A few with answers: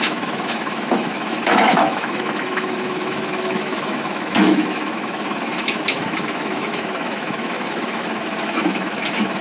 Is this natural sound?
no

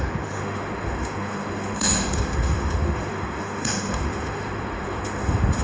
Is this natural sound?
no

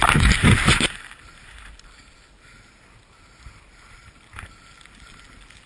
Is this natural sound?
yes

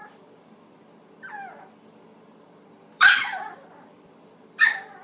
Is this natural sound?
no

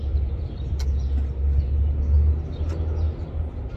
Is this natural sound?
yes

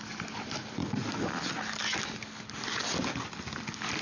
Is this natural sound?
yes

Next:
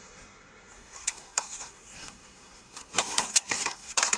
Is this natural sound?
no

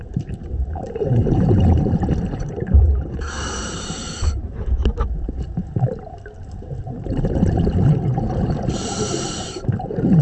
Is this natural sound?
no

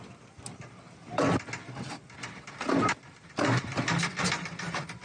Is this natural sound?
yes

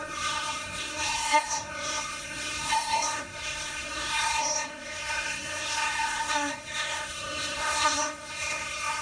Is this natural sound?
no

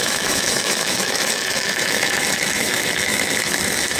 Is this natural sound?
no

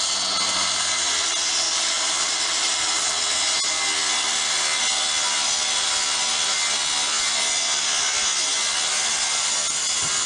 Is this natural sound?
yes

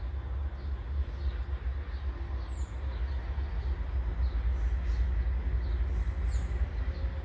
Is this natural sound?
yes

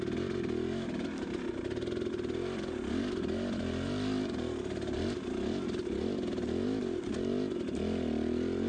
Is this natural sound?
yes